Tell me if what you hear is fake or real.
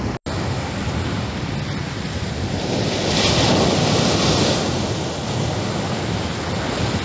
real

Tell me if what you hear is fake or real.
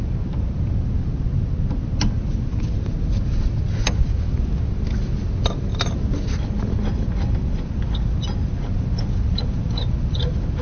real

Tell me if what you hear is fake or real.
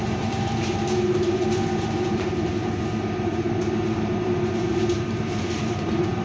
fake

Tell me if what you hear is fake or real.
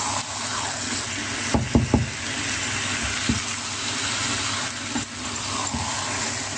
real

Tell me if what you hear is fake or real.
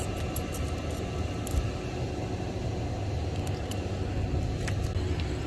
real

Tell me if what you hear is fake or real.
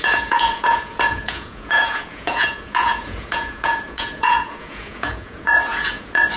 fake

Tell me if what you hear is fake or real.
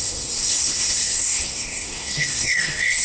fake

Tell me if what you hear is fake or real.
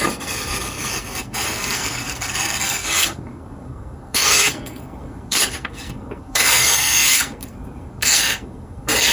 fake